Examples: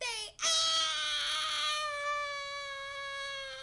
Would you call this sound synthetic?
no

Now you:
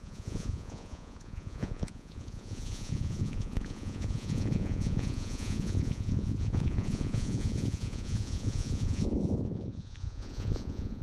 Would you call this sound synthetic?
yes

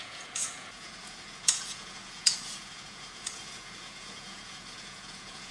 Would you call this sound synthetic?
yes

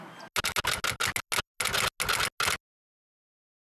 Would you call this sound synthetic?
no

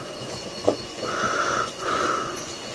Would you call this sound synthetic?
yes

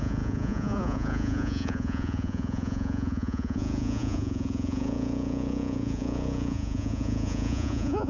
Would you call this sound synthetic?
yes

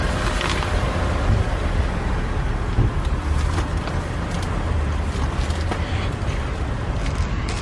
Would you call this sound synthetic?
no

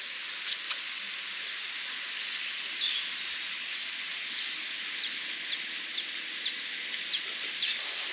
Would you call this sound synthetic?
no